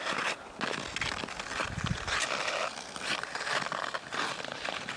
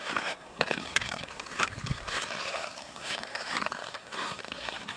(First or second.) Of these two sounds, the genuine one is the first